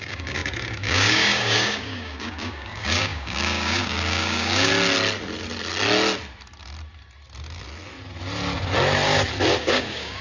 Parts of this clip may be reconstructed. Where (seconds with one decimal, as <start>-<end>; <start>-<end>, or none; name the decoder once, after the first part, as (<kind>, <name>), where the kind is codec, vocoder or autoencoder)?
0.0-4.7 (codec, DAC); 9.6-10.2